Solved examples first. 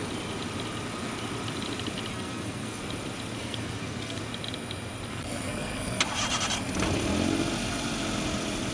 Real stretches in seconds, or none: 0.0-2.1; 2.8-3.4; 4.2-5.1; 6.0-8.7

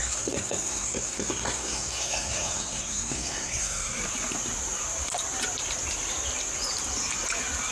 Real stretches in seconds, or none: 4.0-7.7

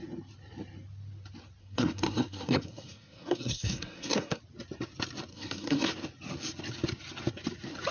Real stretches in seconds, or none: 0.0-1.6; 4.4-5.3; 5.9-7.9

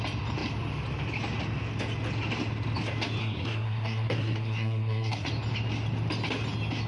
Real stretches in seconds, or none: 0.0-3.2; 5.3-6.9